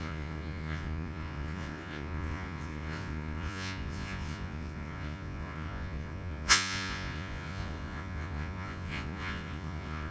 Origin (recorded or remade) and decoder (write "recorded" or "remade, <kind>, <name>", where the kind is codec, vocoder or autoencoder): remade, vocoder, Vocos